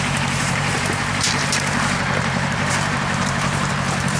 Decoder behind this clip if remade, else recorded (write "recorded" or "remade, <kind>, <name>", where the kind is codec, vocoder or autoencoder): remade, vocoder, BigVGAN v2